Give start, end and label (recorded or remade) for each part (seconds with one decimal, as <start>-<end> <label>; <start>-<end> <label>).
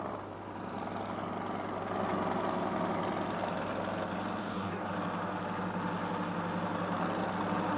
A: 0.0-4.4 recorded; 4.4-4.9 remade; 4.9-7.8 recorded